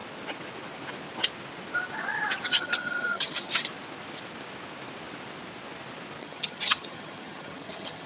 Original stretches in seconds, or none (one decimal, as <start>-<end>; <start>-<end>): 0.0-2.5; 3.5-6.2